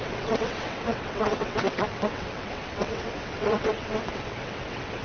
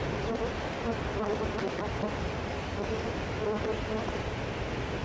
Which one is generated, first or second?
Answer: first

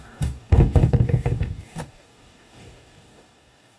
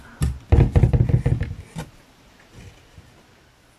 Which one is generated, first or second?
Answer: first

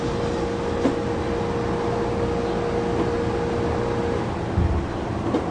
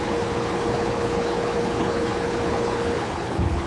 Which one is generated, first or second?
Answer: second